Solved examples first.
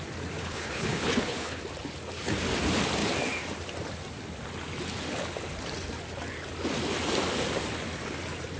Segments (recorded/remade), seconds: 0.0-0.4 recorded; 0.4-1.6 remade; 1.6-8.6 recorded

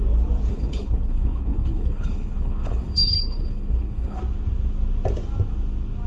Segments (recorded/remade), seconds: 0.0-0.5 recorded; 0.5-4.2 remade; 4.2-6.1 recorded

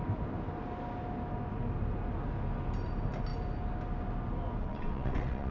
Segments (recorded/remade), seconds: 0.0-4.6 recorded; 4.6-5.5 remade

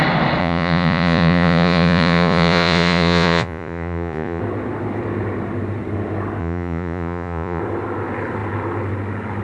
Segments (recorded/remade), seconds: 0.0-0.4 recorded; 0.4-4.4 remade; 4.4-6.4 recorded; 6.4-7.6 remade; 7.6-9.4 recorded

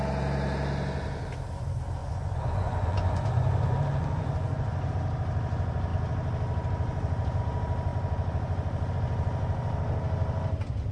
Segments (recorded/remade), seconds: 0.0-2.0 recorded; 2.0-4.9 remade; 4.9-10.9 recorded

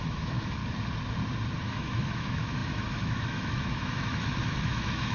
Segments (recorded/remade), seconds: 0.0-0.6 remade; 0.6-1.6 recorded; 1.6-5.1 remade

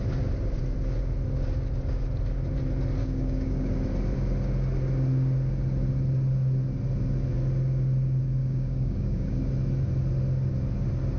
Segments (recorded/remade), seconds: 0.0-3.0 recorded; 3.0-3.7 remade; 3.7-8.4 recorded; 8.4-9.4 remade; 9.4-11.2 recorded

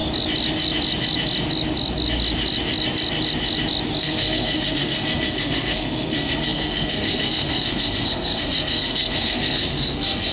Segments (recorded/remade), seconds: 0.0-4.0 recorded; 4.0-10.3 remade